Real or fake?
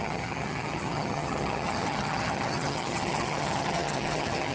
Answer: fake